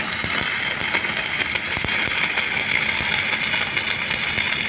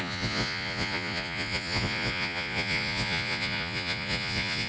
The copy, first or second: second